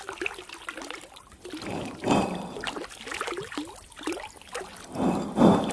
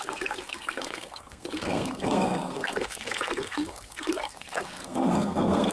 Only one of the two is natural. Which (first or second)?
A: first